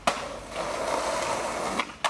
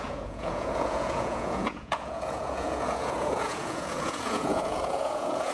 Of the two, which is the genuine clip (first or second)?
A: first